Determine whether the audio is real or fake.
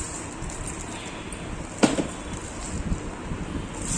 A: real